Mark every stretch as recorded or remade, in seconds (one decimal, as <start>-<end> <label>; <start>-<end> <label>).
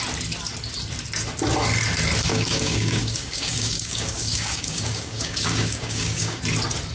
0.0-2.3 recorded; 2.3-6.4 remade; 6.4-6.9 recorded